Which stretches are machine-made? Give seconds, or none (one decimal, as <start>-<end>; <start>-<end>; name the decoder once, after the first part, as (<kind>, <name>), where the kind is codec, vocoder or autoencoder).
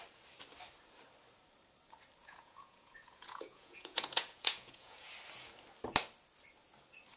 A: 2.2-5.1 (vocoder, Vocos)